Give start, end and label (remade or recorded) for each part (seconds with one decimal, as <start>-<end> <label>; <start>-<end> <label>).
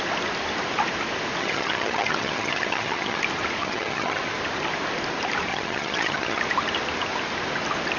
0.0-1.4 recorded; 1.4-3.2 remade; 3.2-3.6 recorded; 3.6-4.2 remade; 4.2-5.5 recorded; 5.5-6.4 remade; 6.4-8.0 recorded